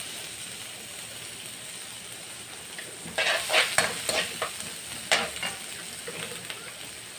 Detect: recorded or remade recorded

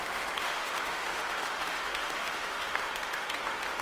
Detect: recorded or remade remade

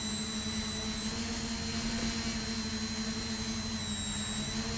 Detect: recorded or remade recorded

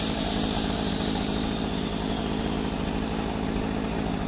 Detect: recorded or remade recorded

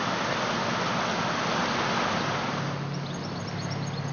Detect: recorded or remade recorded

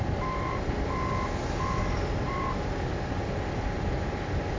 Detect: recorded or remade recorded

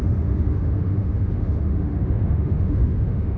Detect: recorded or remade remade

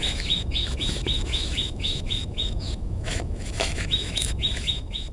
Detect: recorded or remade remade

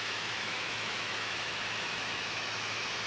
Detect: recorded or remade remade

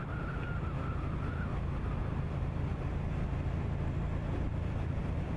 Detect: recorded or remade recorded